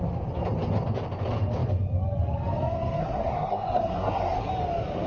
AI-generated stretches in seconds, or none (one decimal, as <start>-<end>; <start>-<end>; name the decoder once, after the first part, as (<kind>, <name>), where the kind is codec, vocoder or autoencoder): 3.0-4.5 (codec, SNAC)